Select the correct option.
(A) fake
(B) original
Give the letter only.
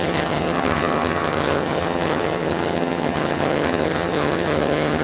A